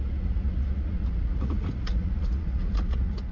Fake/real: fake